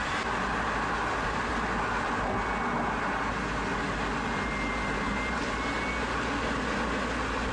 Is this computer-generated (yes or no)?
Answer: no